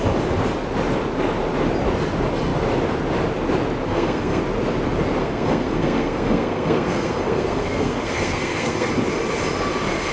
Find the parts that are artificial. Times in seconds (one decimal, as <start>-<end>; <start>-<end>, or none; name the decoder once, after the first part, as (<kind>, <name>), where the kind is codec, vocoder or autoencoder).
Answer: 3.9-4.4 (codec, SNAC); 5.2-8.9